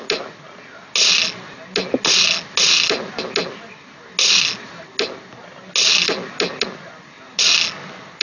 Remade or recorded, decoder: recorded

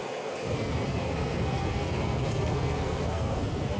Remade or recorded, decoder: remade, codec, SNAC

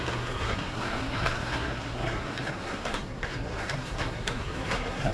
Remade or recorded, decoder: remade, codec, SNAC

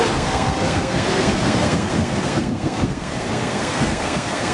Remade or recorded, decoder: remade, codec, SNAC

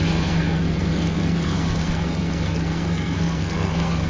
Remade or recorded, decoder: remade, codec, SNAC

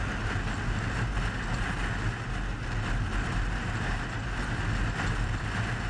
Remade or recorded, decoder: recorded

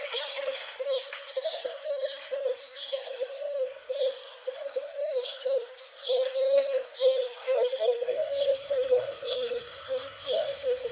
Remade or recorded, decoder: remade, codec, SNAC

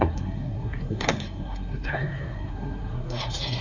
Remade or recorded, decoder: remade, codec, SNAC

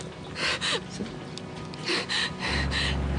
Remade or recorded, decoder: recorded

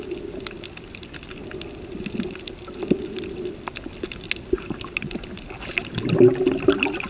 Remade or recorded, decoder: recorded